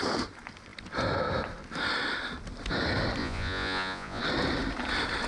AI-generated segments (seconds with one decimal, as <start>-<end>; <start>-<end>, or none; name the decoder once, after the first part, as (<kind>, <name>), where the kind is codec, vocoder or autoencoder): 3.2-4.2 (vocoder, Vocos)